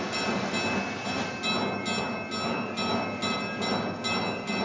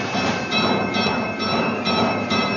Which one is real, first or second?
first